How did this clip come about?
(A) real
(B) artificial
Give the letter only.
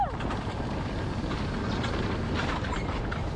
A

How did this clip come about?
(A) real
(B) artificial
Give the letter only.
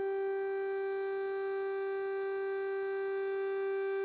A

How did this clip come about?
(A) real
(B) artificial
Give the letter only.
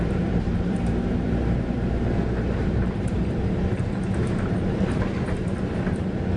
B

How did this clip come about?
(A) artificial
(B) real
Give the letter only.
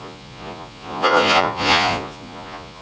A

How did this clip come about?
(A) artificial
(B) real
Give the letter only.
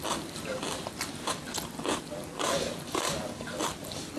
B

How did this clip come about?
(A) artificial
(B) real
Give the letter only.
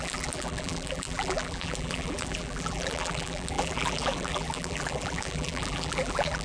A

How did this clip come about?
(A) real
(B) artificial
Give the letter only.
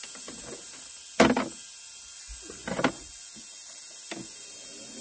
A